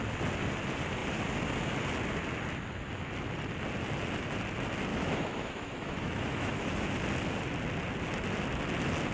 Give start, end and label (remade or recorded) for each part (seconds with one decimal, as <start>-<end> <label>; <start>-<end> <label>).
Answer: 0.0-4.9 recorded; 4.9-6.9 remade; 6.9-9.1 recorded